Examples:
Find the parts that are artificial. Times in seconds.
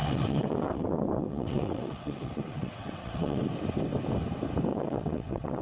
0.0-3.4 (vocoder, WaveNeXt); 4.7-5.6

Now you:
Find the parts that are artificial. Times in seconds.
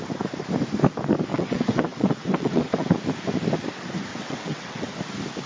1.3-2.9 (vocoder, WaveNeXt); 4.1-4.9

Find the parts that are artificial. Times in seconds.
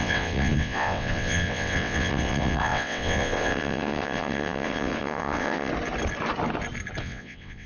0.0-5.7 (vocoder, WaveNeXt); 7.0-7.7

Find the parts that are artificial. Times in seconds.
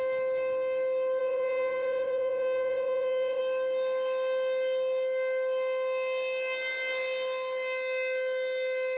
1.2-3.4 (vocoder, WaveNeXt)